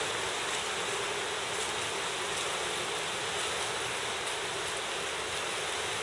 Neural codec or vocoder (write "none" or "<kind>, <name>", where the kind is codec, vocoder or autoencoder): none